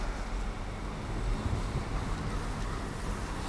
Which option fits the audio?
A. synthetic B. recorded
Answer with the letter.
B